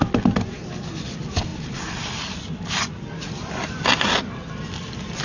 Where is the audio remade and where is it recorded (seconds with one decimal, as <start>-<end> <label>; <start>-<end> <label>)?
0.0-5.2 recorded